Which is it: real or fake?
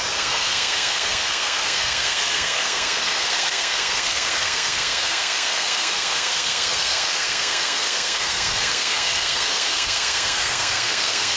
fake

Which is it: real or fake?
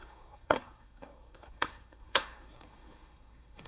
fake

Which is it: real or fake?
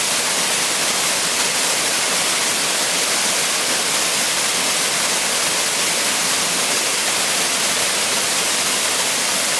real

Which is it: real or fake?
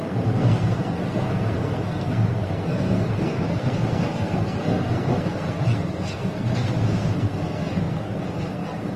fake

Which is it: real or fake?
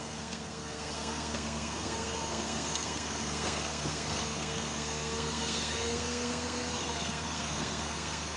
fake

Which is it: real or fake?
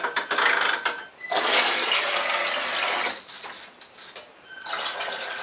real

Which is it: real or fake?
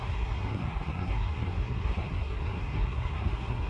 fake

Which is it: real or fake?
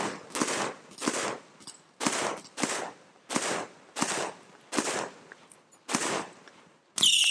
real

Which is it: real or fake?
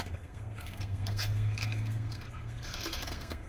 fake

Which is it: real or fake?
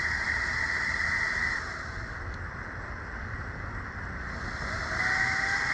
real